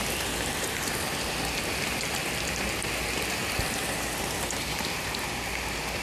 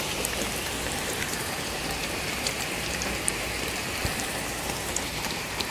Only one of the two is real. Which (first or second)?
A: first